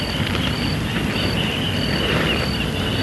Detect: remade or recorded recorded